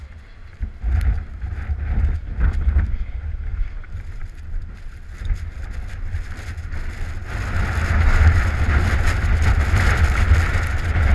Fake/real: real